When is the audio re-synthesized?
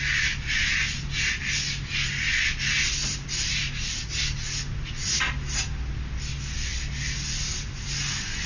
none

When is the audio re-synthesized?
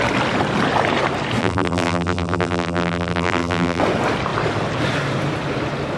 1.4-3.8 (vocoder, BigVGAN v2)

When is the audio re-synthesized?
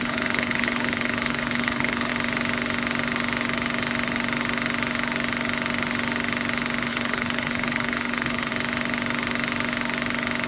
0.0-2.1 (codec, HILCodec); 6.9-8.5